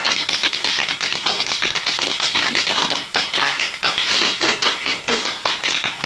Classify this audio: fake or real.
fake